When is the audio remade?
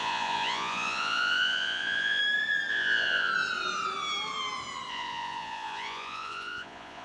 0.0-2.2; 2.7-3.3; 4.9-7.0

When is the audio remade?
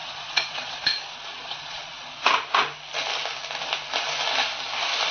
0.0-2.3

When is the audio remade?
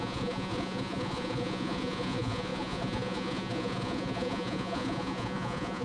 0.0-5.8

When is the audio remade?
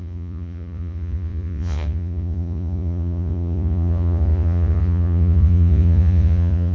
0.0-6.7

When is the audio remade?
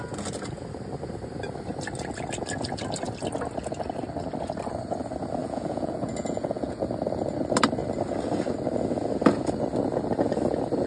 5.4-6.8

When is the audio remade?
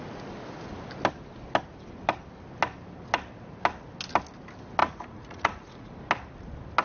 4.8-5.9